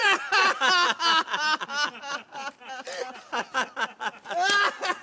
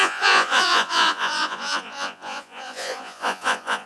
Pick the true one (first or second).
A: first